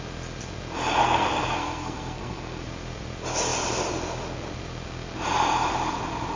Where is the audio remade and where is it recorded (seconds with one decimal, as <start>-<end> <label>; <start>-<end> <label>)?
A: 0.0-1.0 recorded; 1.0-2.6 remade; 2.6-6.4 recorded